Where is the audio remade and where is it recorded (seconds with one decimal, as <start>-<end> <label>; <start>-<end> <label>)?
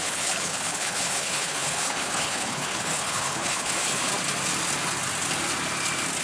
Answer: 0.0-4.1 remade; 4.1-6.2 recorded